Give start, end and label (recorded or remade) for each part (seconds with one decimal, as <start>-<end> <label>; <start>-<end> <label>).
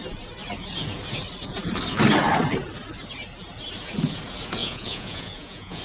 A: 0.0-4.6 recorded; 4.6-5.8 remade